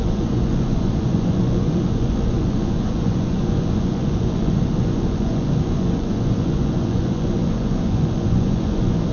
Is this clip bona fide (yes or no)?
no